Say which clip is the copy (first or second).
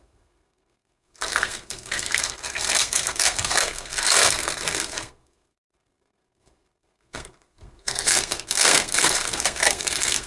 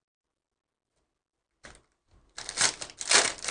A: first